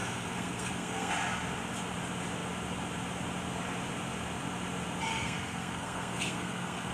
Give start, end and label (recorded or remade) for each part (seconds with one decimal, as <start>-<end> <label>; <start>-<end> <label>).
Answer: 0.0-1.1 remade; 1.1-5.1 recorded; 5.1-6.9 remade